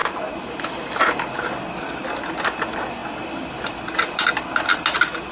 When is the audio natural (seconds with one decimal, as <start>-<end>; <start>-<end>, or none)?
0.0-5.3

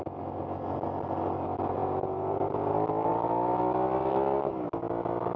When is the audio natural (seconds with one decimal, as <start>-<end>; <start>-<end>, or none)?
0.0-1.8; 2.7-5.4